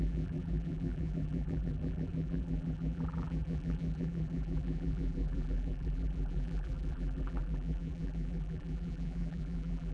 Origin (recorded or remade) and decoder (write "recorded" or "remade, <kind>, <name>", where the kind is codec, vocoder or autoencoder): remade, vocoder, BigVGAN v2